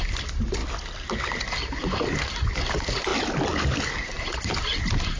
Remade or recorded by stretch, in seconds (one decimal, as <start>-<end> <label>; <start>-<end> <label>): 0.0-5.2 recorded